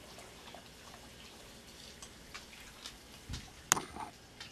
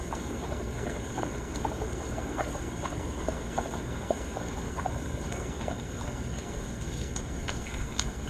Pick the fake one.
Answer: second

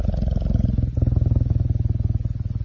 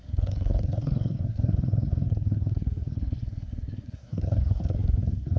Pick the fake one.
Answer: second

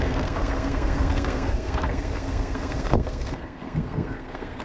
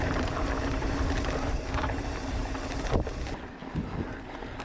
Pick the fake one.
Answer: first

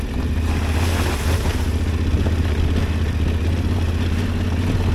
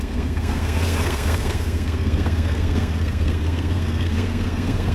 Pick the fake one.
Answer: second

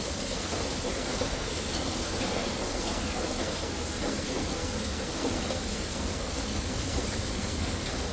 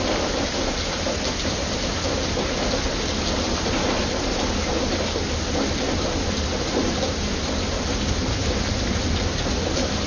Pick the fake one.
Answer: first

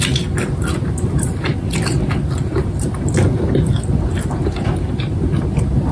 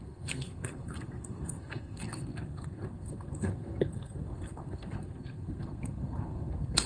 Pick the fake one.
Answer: second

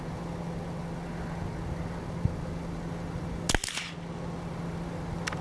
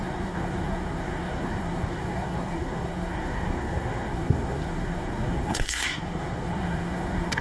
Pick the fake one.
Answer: second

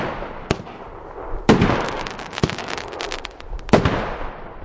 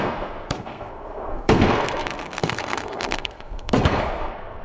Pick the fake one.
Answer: second